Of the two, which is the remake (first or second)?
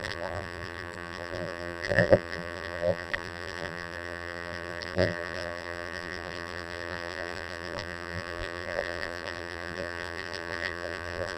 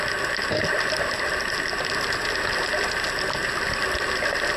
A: first